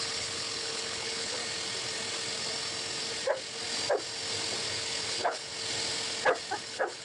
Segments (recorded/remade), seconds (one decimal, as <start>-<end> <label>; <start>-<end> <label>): 0.0-1.4 remade; 1.4-4.7 recorded; 4.7-5.5 remade; 5.5-6.6 recorded; 6.6-7.0 remade